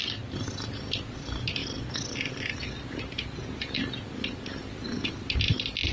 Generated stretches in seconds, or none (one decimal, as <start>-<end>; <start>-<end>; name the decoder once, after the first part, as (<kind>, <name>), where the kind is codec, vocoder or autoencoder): none